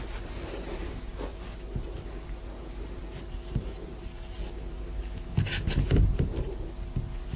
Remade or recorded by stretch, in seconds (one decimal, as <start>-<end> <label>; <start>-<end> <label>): 0.0-7.4 recorded

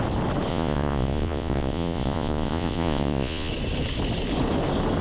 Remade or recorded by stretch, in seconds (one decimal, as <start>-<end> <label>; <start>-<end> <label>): 0.0-0.5 recorded; 0.5-3.5 remade; 3.5-5.0 recorded

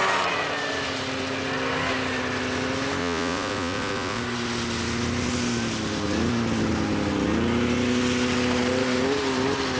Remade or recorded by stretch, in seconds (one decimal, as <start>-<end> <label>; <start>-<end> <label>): 0.0-3.0 recorded; 3.0-4.2 remade; 4.2-9.8 recorded